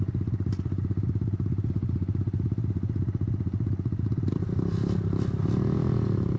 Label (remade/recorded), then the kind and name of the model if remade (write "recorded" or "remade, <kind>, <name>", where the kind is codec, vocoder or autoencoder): recorded